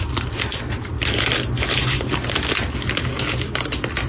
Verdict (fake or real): real